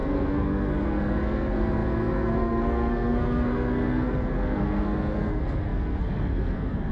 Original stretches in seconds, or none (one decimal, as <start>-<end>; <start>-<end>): none